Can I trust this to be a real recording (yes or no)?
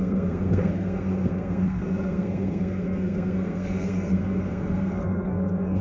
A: no